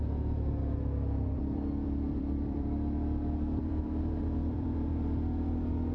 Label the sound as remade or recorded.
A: remade